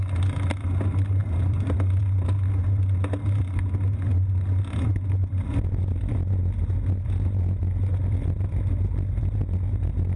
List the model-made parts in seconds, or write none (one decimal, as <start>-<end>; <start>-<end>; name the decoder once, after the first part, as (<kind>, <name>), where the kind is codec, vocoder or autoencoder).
1.2-2.0 (vocoder, BigVGAN v2)

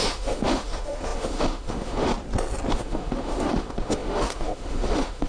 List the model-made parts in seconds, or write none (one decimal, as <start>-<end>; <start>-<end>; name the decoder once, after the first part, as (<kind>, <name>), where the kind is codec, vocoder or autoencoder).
0.0-2.1 (autoencoder, DAC-VAE); 2.7-5.3

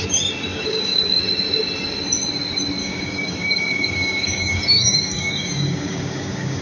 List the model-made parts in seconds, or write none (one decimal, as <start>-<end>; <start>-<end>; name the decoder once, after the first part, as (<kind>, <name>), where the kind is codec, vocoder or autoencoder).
0.5-1.2 (codec, DAC); 2.8-6.6

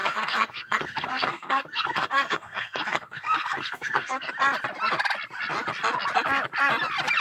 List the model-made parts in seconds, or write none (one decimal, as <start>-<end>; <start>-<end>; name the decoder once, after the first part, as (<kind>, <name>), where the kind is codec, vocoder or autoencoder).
0.0-4.3 (codec, SNAC)

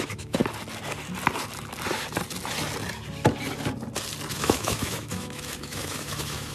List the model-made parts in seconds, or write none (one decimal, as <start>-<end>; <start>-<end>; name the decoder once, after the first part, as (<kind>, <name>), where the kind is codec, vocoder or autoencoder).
0.0-0.4 (autoencoder, DAC-VAE); 4.3-6.5

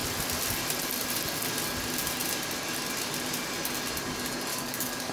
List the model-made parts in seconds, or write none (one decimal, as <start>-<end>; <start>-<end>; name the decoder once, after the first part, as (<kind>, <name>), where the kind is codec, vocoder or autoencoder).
4.5-5.1 (codec, DAC)

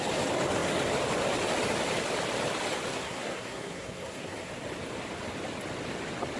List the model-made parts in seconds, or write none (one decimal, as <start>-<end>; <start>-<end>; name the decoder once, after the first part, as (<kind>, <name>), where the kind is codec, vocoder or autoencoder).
2.9-4.5 (codec, SNAC)

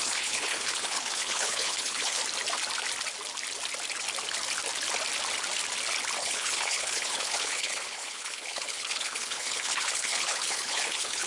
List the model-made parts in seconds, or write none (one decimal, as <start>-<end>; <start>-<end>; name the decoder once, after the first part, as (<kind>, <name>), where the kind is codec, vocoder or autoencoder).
0.0-2.2 (codec, HILCodec); 6.2-11.3